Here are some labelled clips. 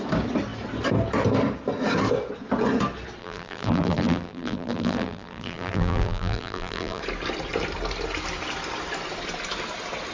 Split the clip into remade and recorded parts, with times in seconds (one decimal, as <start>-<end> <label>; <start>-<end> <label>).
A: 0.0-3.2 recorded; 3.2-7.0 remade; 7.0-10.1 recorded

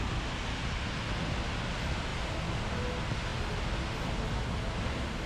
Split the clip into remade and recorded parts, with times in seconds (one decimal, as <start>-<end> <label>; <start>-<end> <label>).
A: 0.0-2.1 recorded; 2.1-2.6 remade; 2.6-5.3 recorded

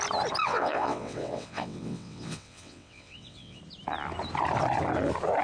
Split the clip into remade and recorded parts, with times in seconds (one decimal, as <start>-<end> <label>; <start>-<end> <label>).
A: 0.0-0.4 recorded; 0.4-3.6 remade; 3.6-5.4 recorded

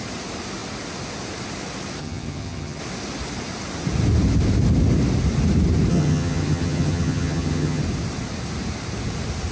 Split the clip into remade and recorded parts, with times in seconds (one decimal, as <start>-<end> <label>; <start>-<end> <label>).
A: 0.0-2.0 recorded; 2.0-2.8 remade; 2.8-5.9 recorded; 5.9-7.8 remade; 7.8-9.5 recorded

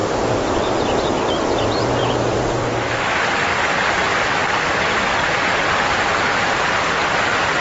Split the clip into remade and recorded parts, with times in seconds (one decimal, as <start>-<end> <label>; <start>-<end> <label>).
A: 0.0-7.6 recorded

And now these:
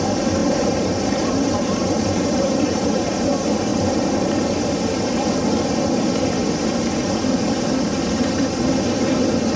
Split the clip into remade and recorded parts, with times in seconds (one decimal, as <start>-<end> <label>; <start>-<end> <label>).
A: 0.0-0.4 recorded; 0.4-2.9 remade; 2.9-3.7 recorded; 3.7-4.6 remade; 4.6-7.9 recorded; 7.9-8.7 remade; 8.7-9.6 recorded

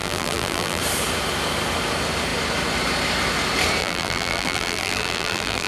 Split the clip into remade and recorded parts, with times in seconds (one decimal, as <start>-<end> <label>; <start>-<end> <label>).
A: 0.0-0.8 remade; 0.8-3.8 recorded; 3.8-5.7 remade

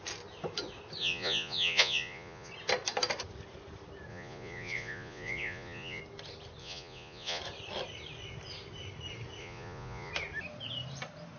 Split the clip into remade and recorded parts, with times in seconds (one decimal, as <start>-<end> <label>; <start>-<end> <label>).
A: 0.0-1.0 recorded; 1.0-2.5 remade; 2.5-4.1 recorded; 4.1-6.0 remade; 6.0-6.6 recorded; 6.6-7.4 remade; 7.4-9.4 recorded; 9.4-10.1 remade; 10.1-11.4 recorded